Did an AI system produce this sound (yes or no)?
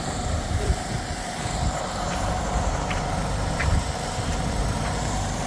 yes